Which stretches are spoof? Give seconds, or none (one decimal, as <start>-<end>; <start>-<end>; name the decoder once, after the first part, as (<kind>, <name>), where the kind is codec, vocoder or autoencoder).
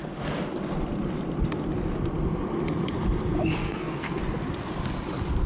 3.6-4.2 (codec, SNAC)